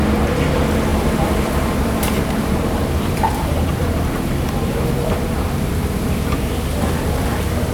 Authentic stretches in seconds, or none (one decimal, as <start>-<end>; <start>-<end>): 0.0-0.9; 5.1-7.7